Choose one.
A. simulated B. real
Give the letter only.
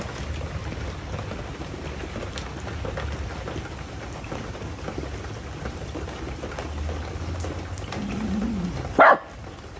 B